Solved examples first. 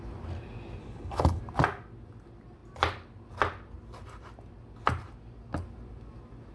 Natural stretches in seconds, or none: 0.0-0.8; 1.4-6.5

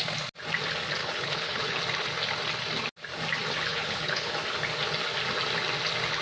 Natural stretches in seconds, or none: 0.0-1.0; 1.8-3.7; 4.3-6.2

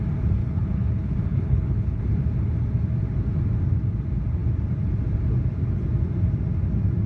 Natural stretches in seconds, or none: 0.0-0.4; 2.0-7.1

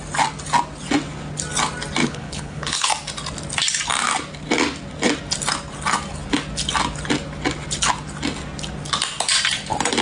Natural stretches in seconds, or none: 0.0-2.0; 2.9-10.0